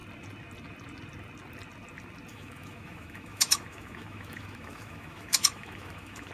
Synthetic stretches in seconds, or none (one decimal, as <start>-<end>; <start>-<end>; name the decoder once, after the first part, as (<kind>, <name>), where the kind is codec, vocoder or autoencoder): 2.3-6.3 (autoencoder, DAC-VAE)